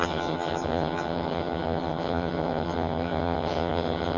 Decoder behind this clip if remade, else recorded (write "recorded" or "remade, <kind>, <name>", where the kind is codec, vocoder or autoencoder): remade, vocoder, HiFi-GAN